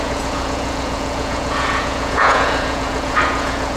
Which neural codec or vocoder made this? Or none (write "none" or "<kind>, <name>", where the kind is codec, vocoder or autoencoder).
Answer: vocoder, Vocos